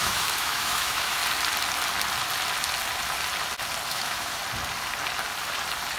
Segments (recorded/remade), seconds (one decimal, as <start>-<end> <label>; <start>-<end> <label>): 0.0-1.2 remade; 1.2-3.9 recorded; 3.9-4.4 remade; 4.4-6.0 recorded